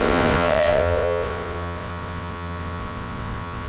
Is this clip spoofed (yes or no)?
yes